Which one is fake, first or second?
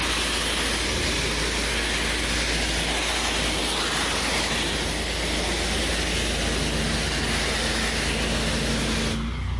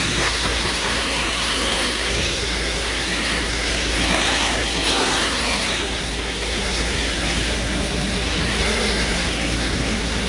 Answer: second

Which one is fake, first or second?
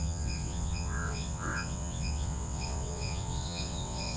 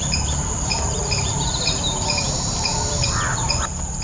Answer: first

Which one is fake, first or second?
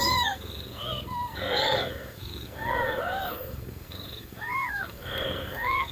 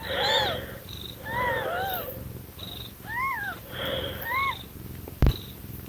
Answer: first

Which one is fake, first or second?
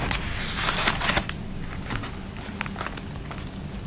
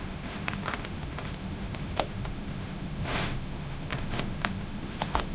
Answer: second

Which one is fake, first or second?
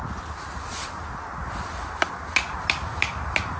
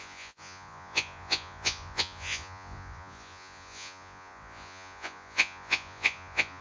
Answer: second